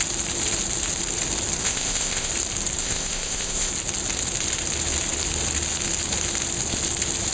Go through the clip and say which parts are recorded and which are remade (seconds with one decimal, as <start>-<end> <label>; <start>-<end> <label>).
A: 0.0-1.6 recorded; 1.6-2.3 remade; 2.3-2.8 recorded; 2.8-3.7 remade; 3.7-7.3 recorded